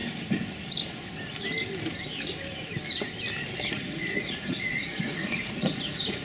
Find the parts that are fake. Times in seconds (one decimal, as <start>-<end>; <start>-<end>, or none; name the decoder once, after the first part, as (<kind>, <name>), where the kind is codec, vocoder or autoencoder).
3.7-6.2 (vocoder, Vocos)